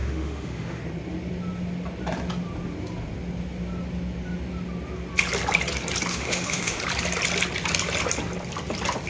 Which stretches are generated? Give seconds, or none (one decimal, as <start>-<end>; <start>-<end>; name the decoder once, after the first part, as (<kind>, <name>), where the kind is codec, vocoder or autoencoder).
0.0-0.8 (autoencoder, DAC-VAE); 6.1-6.8

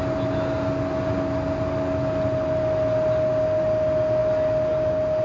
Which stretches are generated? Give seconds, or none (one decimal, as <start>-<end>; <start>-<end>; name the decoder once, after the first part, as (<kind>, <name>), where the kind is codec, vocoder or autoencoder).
none

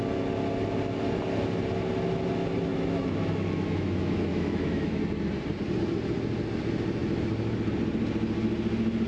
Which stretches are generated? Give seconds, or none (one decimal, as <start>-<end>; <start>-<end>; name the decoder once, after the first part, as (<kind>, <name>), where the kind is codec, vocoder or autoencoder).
2.7-5.0 (autoencoder, DAC-VAE)

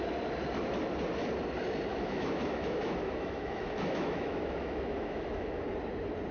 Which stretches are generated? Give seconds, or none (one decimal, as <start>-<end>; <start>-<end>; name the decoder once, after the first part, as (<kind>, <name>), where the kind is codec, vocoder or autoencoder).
1.9-5.6 (autoencoder, DAC-VAE)

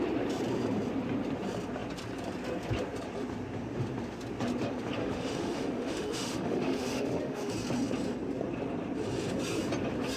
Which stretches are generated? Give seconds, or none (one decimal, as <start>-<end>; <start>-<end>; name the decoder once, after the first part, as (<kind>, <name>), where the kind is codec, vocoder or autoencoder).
5.0-7.5 (autoencoder, DAC-VAE)

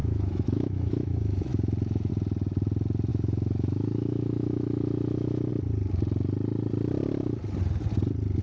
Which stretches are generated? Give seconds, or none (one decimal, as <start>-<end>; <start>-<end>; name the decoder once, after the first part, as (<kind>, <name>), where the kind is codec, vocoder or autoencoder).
0.0-2.1 (autoencoder, DAC-VAE); 3.1-5.5